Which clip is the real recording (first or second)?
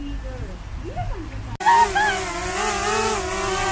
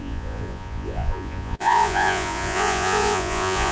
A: first